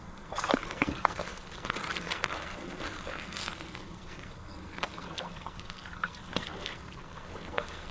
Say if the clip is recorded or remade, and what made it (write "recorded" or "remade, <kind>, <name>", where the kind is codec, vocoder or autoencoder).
remade, codec, SNAC